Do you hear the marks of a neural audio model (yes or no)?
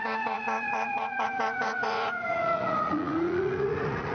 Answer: yes